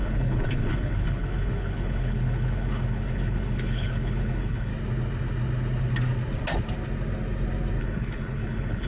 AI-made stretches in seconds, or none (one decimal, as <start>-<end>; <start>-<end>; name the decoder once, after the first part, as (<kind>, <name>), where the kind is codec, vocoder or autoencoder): 0.0-4.7 (codec, HILCodec); 7.8-8.9